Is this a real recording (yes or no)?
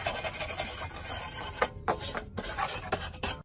yes